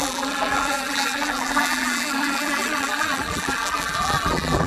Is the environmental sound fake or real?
fake